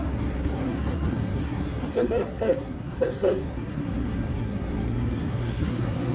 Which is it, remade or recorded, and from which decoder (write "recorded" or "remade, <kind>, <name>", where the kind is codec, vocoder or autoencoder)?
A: remade, codec, SNAC